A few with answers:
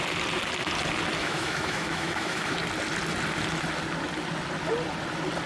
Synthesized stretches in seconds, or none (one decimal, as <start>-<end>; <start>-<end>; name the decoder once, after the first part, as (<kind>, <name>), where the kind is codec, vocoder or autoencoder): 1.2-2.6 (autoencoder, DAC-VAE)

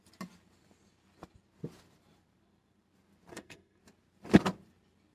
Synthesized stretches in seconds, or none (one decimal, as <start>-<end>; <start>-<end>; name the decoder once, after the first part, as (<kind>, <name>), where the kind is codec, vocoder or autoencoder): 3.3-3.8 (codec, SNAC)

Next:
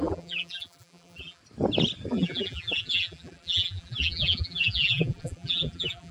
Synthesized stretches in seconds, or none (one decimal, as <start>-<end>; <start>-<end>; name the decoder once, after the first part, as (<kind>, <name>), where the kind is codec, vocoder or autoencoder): 0.0-1.4 (vocoder, BigVGAN v2); 2.1-6.1

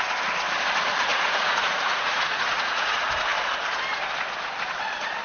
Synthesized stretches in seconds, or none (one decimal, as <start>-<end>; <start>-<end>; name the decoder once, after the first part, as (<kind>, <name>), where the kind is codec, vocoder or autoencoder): 1.1-2.9 (vocoder, Vocos)

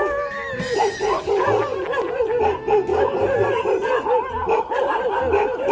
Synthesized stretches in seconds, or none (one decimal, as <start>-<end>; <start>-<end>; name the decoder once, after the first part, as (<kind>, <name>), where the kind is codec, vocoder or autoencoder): none

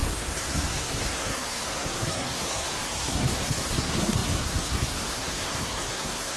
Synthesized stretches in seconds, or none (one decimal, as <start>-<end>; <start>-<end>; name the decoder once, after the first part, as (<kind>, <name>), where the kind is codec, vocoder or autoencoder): 0.0-6.4 (codec, SNAC)